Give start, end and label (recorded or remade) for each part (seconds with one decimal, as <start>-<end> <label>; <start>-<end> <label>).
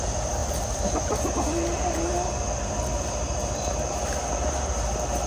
0.0-5.3 recorded